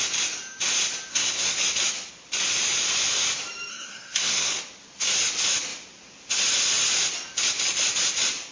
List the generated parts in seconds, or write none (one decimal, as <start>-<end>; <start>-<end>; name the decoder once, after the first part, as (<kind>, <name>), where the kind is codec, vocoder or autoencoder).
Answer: 1.1-1.6 (codec, SNAC); 3.7-4.6

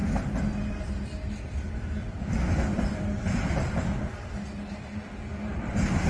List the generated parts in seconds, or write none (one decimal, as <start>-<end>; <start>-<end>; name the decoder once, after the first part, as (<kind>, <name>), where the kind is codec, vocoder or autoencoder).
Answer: none

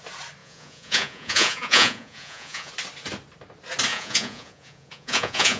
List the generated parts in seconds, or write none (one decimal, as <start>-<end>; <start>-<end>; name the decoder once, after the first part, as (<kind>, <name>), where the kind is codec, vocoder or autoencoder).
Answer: 0.4-2.7 (vocoder, Vocos); 3.9-5.6

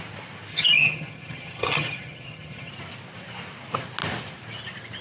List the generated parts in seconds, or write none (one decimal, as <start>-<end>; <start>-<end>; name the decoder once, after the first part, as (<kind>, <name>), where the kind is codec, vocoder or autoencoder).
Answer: 0.5-2.7 (vocoder, HiFi-GAN)

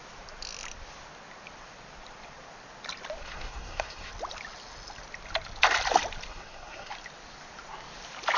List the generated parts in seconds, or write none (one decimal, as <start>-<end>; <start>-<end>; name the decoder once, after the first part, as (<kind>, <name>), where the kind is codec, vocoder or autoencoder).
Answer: 3.2-4.1 (codec, SNAC); 6.3-6.9

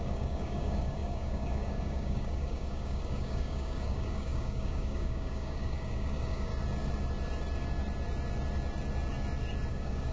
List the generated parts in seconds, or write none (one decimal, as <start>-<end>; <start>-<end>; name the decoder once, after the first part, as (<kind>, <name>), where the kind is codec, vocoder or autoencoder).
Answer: 0.0-6.5 (codec, DAC); 9.7-10.1